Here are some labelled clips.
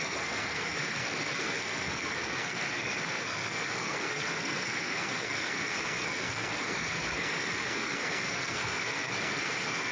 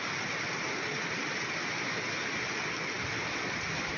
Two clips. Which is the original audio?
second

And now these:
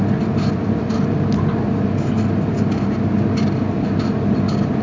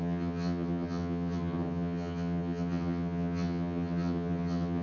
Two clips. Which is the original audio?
first